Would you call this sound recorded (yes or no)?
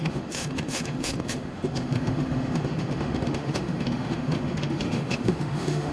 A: no